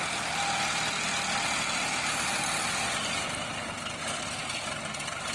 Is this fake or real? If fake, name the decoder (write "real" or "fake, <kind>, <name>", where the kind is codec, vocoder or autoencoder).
real